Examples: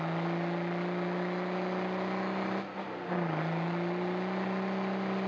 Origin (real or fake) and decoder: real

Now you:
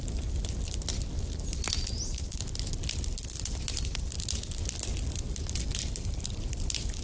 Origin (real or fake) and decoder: real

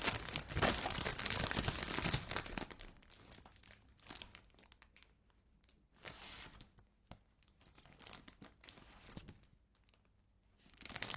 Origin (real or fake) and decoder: real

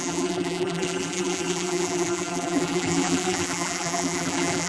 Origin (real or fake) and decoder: fake, vocoder, BigVGAN v2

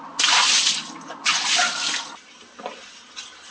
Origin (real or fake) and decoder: real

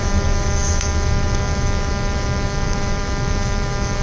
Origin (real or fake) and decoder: fake, autoencoder, DAC-VAE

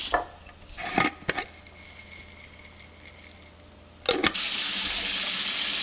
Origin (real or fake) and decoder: real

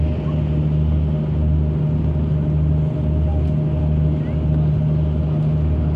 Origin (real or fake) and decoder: real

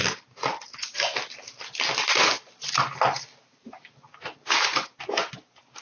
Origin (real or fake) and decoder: real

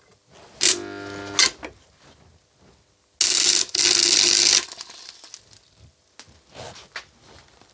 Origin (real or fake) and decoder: real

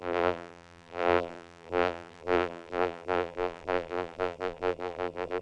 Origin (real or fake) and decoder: fake, vocoder, BigVGAN v2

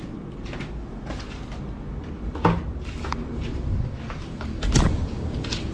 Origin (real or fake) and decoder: real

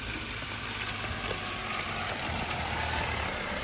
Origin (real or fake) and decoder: real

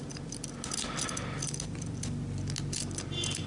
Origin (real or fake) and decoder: real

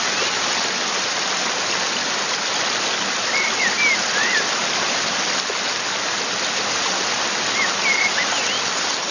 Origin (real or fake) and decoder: real